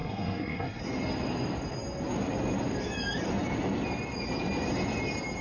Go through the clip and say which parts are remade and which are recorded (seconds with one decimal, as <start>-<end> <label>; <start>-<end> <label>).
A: 0.0-0.8 remade; 0.8-5.4 recorded